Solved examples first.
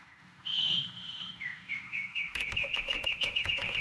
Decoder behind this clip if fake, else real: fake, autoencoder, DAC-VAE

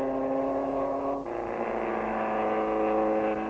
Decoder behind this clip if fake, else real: real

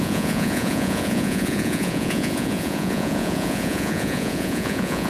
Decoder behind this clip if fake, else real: fake, vocoder, Vocos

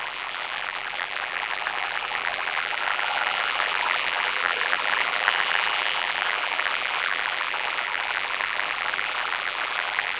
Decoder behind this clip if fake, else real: fake, vocoder, BigVGAN v2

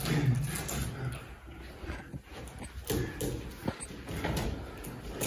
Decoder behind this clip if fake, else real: real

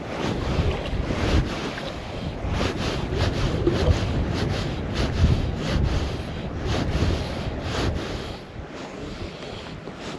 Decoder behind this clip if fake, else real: real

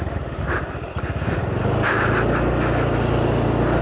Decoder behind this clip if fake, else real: real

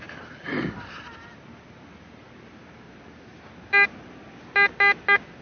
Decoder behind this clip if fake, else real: real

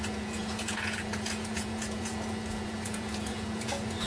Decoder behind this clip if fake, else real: fake, vocoder, Vocos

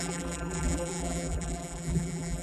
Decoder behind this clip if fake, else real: fake, vocoder, BigVGAN v2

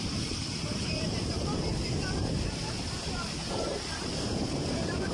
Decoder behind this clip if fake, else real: fake, vocoder, BigVGAN v2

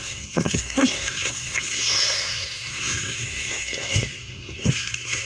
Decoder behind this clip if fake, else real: fake, codec, SNAC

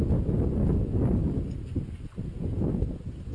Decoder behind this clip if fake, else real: real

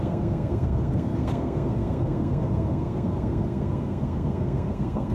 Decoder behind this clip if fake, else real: fake, codec, SNAC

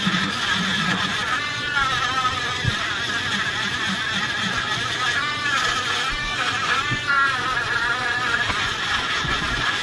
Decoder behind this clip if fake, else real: fake, vocoder, Vocos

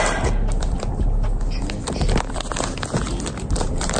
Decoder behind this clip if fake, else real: fake, vocoder, BigVGAN v2